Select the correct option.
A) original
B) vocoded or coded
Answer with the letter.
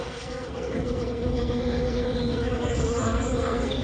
B